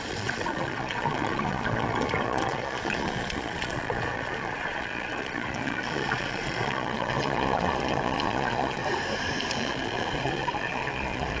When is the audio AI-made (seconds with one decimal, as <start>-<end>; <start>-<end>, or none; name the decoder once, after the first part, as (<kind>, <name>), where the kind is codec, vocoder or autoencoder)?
0.0-8.8 (vocoder, Vocos); 9.5-11.4

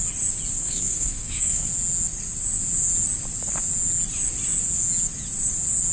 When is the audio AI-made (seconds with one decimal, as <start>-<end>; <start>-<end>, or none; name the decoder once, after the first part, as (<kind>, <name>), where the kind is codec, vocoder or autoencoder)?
0.6-1.7 (codec, SNAC)

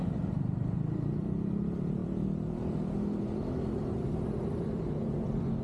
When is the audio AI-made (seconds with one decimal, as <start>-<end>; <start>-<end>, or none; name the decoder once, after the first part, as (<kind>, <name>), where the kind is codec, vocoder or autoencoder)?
2.0-3.4 (vocoder, BigVGAN v2)

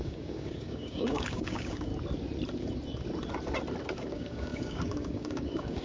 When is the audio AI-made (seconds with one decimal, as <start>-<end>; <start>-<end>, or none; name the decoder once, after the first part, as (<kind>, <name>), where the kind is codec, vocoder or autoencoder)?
0.0-1.9 (codec, DAC); 3.9-5.8

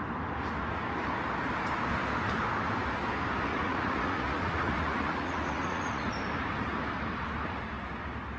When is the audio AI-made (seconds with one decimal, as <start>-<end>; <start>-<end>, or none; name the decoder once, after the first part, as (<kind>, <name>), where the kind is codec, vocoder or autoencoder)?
3.5-6.1 (vocoder, Vocos)

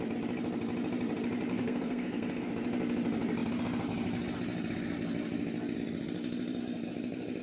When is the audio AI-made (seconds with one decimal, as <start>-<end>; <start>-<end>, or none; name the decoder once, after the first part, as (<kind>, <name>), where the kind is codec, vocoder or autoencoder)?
1.5-2.5 (codec, SNAC)